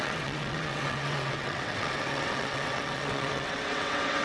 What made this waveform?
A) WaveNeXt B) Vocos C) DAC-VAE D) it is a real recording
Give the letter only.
A